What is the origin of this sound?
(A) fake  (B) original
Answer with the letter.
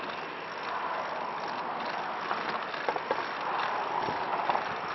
B